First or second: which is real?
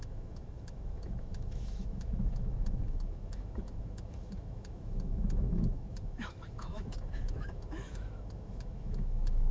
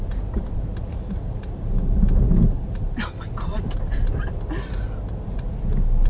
second